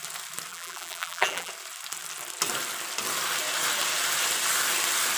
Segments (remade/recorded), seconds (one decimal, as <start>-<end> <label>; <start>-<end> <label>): 0.0-0.5 recorded; 0.5-1.5 remade; 1.5-5.2 recorded